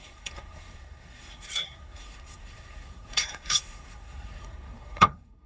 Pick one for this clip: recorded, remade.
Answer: remade